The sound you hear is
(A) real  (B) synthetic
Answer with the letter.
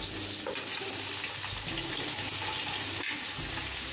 A